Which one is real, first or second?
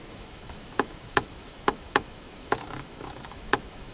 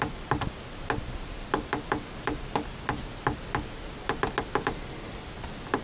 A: second